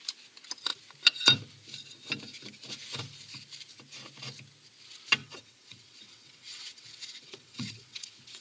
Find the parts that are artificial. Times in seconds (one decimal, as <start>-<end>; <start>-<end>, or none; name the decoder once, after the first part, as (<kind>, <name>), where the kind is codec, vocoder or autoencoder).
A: 5.2-8.4 (vocoder, WaveNeXt)